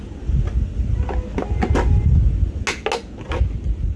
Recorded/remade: recorded